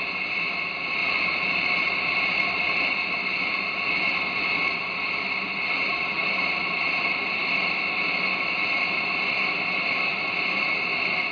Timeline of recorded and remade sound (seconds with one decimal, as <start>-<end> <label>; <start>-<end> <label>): 0.0-1.0 recorded; 1.0-3.8 remade; 3.8-10.1 recorded; 10.1-10.9 remade; 10.9-11.3 recorded